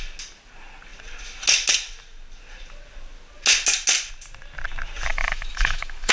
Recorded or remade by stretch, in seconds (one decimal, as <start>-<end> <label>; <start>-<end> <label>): 0.0-5.1 recorded; 5.1-6.1 remade